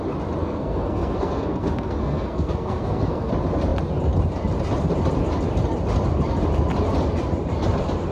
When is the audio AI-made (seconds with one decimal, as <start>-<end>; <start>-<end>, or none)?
0.4-3.3